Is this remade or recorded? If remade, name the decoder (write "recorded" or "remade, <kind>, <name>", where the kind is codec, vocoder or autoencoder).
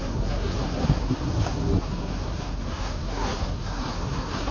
remade, codec, SNAC